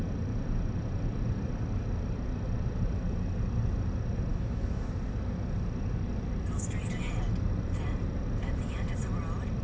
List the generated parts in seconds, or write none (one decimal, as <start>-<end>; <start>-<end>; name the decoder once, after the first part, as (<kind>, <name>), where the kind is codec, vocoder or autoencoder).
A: 4.3-4.9 (autoencoder, DAC-VAE)